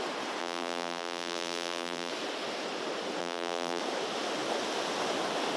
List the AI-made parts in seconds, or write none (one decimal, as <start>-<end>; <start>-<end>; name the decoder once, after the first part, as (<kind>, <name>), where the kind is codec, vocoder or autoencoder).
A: 0.4-2.1 (vocoder, BigVGAN v2); 3.2-3.8